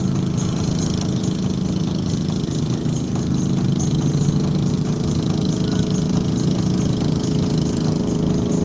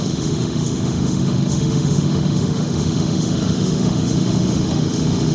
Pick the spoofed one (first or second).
second